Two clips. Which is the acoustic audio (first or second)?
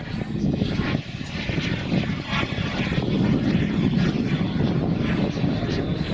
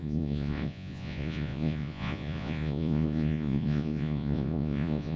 first